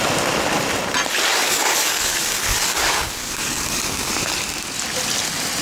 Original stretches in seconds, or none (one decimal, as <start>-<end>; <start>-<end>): 0.0-1.3; 4.1-5.6